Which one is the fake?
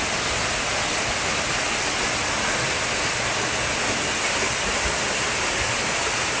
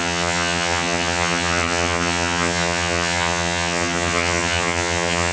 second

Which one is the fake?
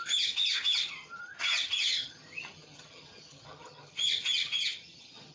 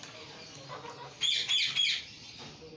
first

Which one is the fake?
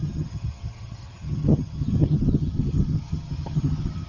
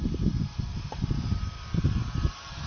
first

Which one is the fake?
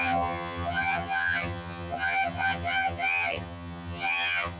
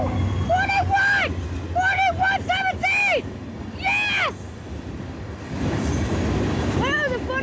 first